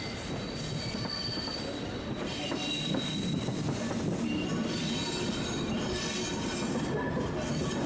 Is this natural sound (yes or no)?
yes